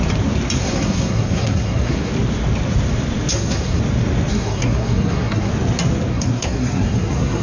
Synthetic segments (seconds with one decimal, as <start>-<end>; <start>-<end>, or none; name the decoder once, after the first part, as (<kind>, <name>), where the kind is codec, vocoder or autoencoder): 0.6-2.1 (codec, SNAC); 3.3-3.8; 4.3-5.5; 6.1-7.4